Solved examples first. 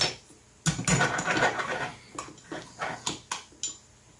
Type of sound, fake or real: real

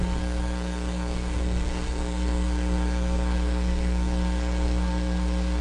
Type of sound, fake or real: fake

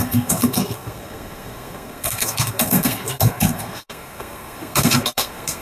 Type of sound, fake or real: fake